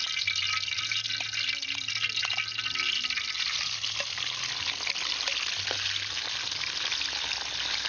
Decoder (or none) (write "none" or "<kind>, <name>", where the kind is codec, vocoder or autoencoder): none